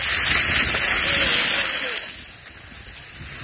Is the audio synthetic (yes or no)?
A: no